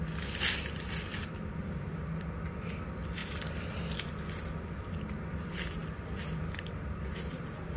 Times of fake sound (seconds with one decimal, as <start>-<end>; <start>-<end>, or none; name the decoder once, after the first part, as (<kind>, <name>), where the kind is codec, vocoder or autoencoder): none